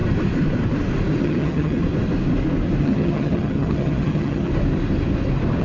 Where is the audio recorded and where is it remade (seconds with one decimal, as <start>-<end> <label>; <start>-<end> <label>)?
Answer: 0.0-1.2 recorded; 1.2-1.8 remade; 1.8-2.8 recorded; 2.8-4.5 remade; 4.5-5.6 recorded